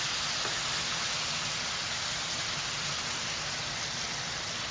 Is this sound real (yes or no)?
yes